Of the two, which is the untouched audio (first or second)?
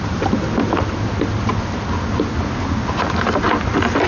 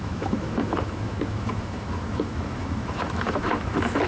first